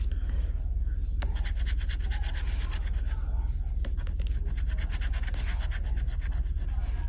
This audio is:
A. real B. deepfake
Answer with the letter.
A